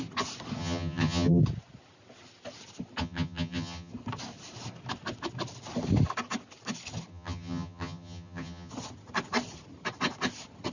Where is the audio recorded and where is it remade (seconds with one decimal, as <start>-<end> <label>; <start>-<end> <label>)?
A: 0.0-0.6 recorded; 0.6-1.4 remade; 1.4-3.0 recorded; 3.0-3.9 remade; 3.9-7.1 recorded; 7.1-8.7 remade; 8.7-10.7 recorded